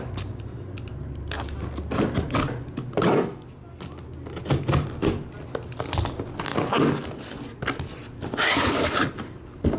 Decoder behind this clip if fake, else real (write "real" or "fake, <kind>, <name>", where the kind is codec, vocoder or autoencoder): real